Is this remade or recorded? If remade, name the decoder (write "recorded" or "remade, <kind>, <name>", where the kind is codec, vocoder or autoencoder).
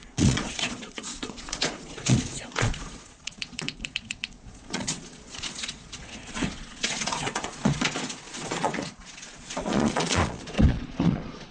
remade, vocoder, Vocos